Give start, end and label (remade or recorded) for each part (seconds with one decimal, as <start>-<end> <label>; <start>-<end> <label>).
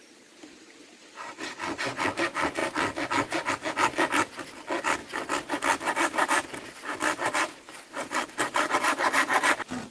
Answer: 0.0-5.0 recorded; 5.0-8.7 remade; 8.7-9.9 recorded